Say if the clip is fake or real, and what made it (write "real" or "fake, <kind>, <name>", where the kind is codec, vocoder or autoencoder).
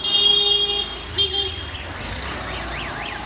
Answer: real